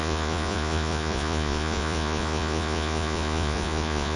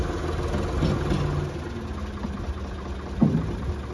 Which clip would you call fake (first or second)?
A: first